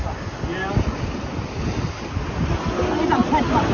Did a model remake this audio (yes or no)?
no